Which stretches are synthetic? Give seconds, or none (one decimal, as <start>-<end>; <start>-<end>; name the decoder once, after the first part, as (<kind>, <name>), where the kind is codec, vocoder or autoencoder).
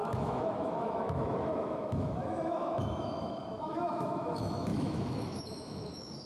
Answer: 0.0-6.3 (autoencoder, DAC-VAE)